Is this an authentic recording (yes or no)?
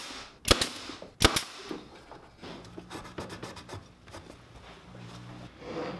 yes